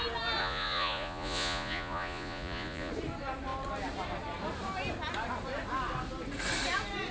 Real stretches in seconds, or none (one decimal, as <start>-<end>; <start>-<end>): 0.0-0.4; 2.9-7.1